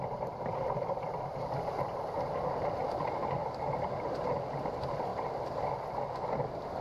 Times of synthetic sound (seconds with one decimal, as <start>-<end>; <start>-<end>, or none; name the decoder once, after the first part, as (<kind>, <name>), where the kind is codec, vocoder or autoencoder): none